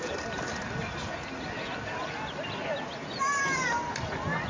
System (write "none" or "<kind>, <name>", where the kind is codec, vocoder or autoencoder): none